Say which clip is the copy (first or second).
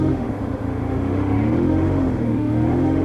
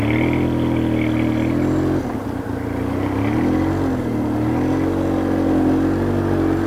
first